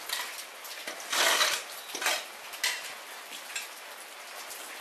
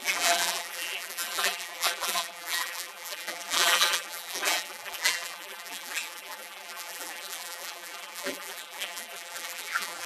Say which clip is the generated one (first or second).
second